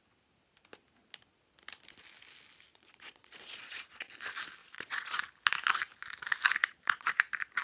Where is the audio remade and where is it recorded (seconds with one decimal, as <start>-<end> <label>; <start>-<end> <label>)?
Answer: 0.0-2.7 recorded; 2.7-4.1 remade; 4.1-4.6 recorded; 4.6-5.2 remade; 5.2-6.6 recorded; 6.6-7.1 remade; 7.1-7.6 recorded